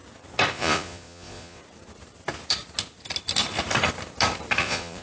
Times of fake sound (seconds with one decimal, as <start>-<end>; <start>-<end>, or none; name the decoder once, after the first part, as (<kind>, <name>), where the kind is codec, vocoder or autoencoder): 0.5-1.6 (vocoder, Vocos); 4.6-5.0